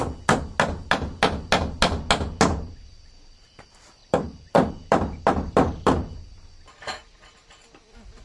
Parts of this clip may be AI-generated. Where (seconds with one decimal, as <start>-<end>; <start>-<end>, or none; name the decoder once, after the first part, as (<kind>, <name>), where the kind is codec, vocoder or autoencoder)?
4.0-6.5 (vocoder, BigVGAN v2)